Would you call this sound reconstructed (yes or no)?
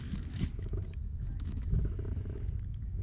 yes